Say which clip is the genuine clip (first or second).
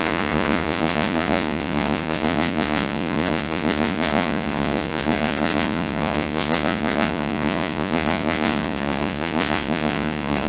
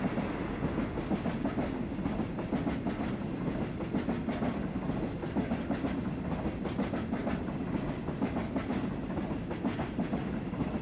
second